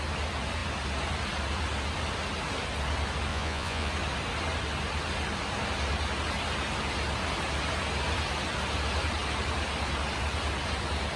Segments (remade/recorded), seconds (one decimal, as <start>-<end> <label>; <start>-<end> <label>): 0.0-3.3 recorded; 3.3-3.9 remade; 3.9-11.2 recorded